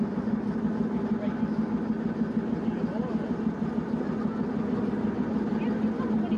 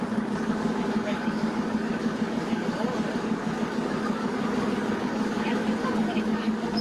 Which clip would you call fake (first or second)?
second